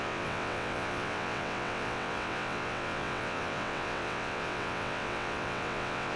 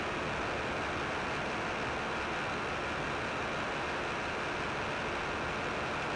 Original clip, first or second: second